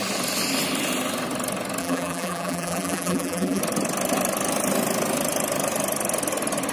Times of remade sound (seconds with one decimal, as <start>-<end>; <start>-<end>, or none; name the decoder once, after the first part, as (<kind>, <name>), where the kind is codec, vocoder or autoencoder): 1.8-3.6 (vocoder, BigVGAN v2)